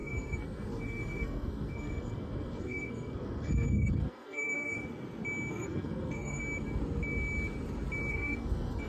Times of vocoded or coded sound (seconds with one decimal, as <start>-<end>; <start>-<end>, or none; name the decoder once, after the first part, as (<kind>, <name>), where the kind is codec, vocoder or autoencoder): 0.0-4.8 (codec, SNAC); 5.5-6.4; 8.1-8.9